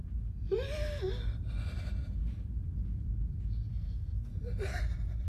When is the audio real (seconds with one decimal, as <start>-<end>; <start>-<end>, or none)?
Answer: 0.0-3.7; 4.3-5.3